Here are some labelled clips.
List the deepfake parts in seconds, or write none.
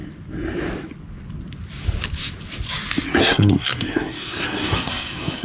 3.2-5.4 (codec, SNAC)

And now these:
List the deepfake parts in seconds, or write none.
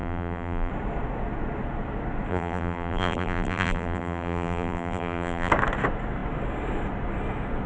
0.0-0.7 (vocoder, BigVGAN v2); 2.3-5.5